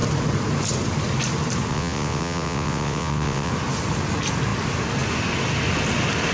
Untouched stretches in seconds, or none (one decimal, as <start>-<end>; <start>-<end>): 0.0-1.7; 3.5-6.3